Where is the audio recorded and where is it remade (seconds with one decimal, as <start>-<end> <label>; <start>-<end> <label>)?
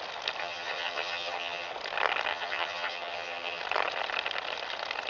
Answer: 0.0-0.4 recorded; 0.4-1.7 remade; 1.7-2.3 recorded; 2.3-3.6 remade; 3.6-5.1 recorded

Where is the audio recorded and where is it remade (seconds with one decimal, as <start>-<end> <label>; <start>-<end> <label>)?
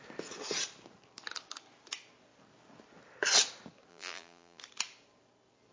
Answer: 0.0-3.9 recorded; 3.9-4.6 remade; 4.6-5.7 recorded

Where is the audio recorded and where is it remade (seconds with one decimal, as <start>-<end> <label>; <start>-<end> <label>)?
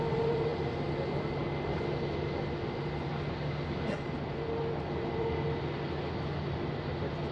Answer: 0.0-7.3 recorded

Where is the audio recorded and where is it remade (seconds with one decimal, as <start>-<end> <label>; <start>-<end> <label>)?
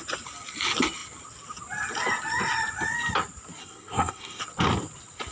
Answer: 0.0-3.6 recorded; 3.6-4.4 remade; 4.4-5.3 recorded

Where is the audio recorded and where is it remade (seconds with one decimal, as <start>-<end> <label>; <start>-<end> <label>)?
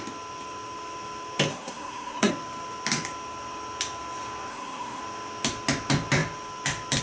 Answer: 0.0-1.5 recorded; 1.5-2.3 remade; 2.3-4.5 recorded; 4.5-5.0 remade; 5.0-7.0 recorded